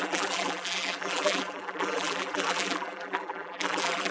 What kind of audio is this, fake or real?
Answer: fake